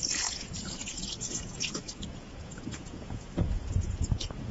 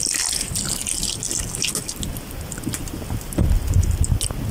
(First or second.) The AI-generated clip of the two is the first